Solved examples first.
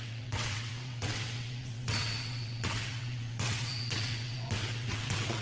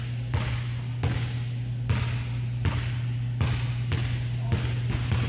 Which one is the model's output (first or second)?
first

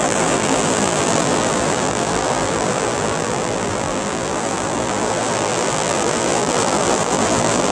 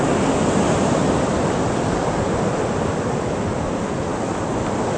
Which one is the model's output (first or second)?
first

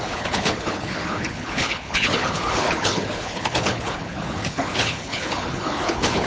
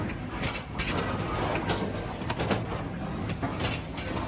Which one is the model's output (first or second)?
first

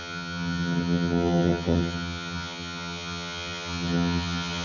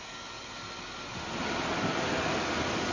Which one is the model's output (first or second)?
first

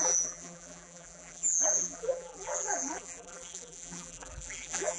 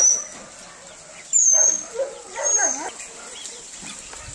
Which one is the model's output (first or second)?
first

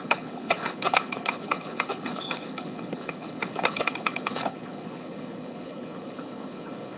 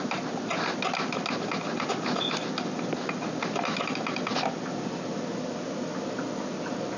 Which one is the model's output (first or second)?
first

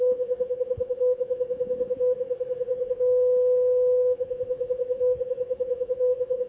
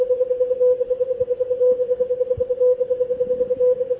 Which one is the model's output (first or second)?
first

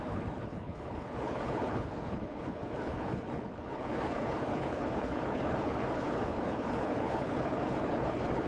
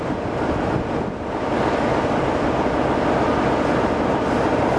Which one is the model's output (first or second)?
first